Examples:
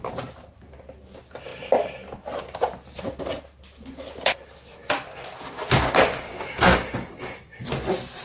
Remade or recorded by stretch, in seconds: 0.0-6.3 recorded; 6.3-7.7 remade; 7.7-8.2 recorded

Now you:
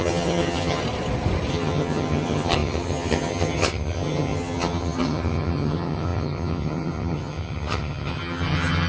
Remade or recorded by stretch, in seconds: 0.0-0.8 remade; 0.8-1.5 recorded; 1.5-8.9 remade

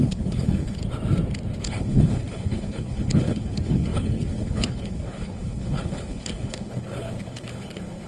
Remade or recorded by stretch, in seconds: 0.0-0.8 remade; 0.8-1.6 recorded; 1.6-8.1 remade